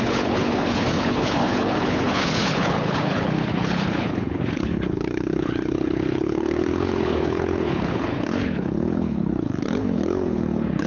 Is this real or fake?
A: fake